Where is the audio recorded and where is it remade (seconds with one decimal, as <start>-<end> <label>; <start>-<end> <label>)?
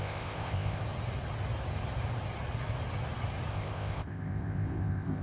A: 0.0-0.8 remade; 0.8-3.5 recorded; 3.5-5.2 remade